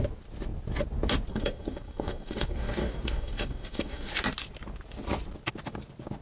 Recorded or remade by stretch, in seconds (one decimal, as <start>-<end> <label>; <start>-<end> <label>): 0.0-1.3 recorded; 1.3-4.1 remade; 4.1-6.2 recorded